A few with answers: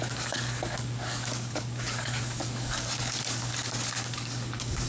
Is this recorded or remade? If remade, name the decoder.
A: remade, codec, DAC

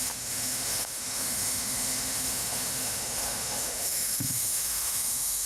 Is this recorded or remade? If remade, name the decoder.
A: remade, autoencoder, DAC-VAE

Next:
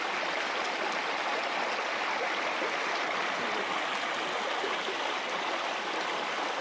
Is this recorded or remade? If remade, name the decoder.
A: recorded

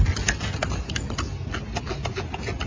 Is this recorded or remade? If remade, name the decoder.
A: recorded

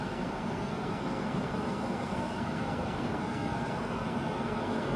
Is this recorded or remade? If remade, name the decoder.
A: remade, codec, SNAC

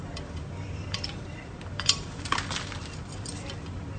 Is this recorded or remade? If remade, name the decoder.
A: remade, vocoder, BigVGAN v2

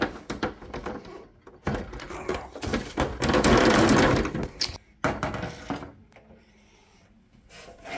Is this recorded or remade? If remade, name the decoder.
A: recorded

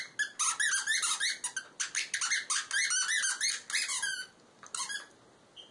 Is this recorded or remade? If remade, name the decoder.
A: recorded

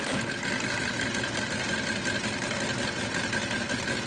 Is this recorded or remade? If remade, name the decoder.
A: recorded